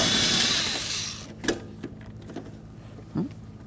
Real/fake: real